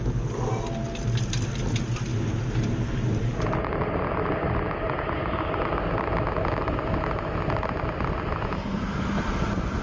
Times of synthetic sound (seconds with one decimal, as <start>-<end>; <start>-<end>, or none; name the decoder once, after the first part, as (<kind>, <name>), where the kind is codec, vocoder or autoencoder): none